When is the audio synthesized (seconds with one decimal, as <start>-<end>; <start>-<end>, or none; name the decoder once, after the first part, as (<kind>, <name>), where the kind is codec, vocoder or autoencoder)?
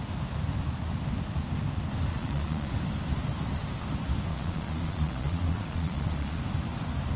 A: 2.1-2.7 (vocoder, Vocos); 4.3-6.4